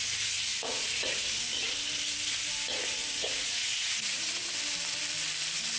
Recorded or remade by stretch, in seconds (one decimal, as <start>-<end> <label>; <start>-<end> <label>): 0.0-0.5 recorded; 0.5-1.1 remade; 1.1-3.2 recorded; 3.2-4.5 remade; 4.5-5.8 recorded